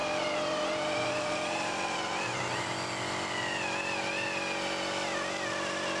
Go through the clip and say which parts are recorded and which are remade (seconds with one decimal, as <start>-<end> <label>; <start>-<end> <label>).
0.0-2.7 remade; 2.7-6.0 recorded